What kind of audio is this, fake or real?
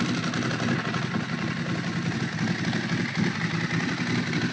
real